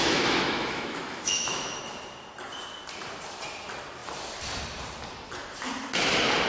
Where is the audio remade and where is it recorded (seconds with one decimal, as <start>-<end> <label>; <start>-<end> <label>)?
0.0-1.8 remade; 1.8-6.5 recorded

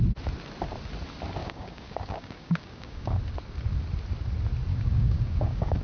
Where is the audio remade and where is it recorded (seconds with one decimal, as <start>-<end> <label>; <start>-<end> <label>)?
0.0-1.4 recorded; 1.4-3.2 remade; 3.2-4.7 recorded; 4.7-5.8 remade

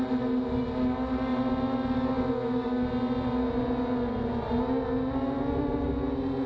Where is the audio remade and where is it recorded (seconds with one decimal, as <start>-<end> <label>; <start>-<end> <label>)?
0.0-6.5 recorded